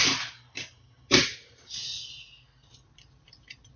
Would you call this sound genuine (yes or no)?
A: no